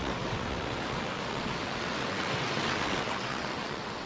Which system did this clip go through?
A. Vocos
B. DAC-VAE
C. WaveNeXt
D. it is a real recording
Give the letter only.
C